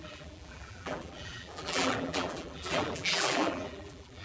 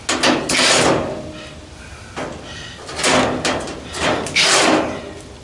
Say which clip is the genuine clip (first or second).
second